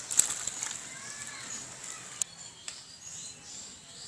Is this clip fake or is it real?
real